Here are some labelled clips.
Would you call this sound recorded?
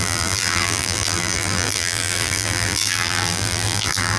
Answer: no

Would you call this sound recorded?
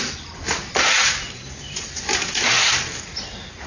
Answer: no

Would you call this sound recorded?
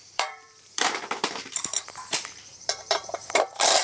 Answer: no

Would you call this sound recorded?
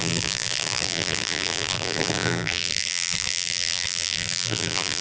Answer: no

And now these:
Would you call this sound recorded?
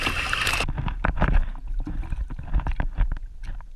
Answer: yes